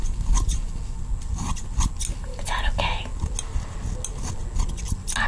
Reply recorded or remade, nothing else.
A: recorded